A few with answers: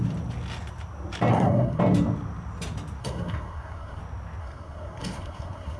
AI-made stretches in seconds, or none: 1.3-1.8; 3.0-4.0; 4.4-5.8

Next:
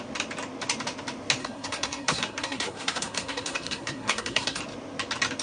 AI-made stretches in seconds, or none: 1.4-4.6